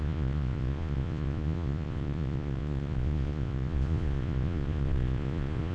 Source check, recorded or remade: remade